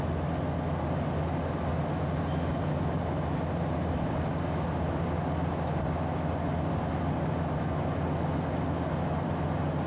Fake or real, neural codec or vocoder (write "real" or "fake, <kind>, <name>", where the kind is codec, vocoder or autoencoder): real